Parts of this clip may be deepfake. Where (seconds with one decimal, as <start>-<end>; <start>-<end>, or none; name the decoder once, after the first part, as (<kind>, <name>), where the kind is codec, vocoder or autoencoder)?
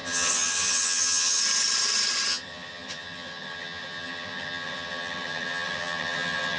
0.0-1.4 (vocoder, HiFi-GAN); 2.3-6.6